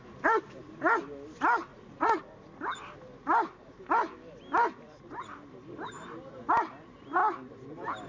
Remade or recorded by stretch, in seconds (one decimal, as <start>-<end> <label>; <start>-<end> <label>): 0.0-1.7 recorded; 1.7-2.2 remade; 2.2-8.1 recorded